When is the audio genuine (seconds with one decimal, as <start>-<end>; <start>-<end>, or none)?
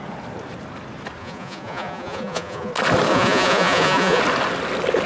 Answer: 0.0-1.2; 2.7-3.1; 4.2-5.1